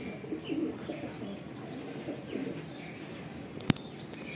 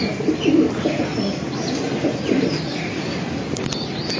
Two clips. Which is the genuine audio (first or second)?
first